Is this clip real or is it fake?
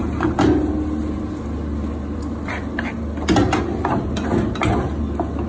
real